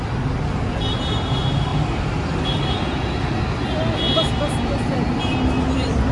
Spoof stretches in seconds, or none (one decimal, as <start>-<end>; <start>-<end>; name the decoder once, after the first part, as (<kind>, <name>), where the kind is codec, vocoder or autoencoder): none